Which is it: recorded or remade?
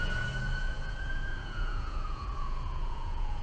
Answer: remade